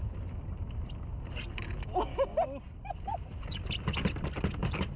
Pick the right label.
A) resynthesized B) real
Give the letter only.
B